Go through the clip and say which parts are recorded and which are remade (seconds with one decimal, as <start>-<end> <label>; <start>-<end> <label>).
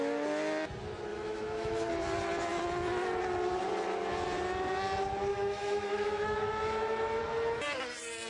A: 0.0-1.1 recorded; 1.1-1.9 remade; 1.9-5.3 recorded; 5.3-7.2 remade; 7.2-8.3 recorded